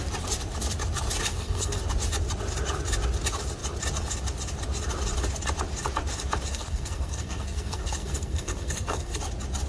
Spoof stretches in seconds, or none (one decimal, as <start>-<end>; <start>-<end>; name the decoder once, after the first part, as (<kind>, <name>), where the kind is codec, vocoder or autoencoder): 1.3-1.8 (codec, SNAC); 6.5-9.2